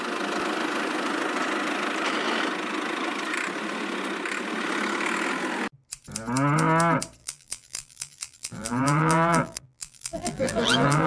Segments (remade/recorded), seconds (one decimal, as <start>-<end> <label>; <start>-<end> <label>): 0.0-7.2 recorded; 7.2-11.1 remade